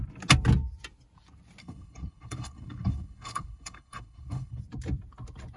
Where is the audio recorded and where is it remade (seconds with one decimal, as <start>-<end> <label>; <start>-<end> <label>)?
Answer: 0.0-1.6 recorded; 1.6-4.6 remade; 4.6-5.6 recorded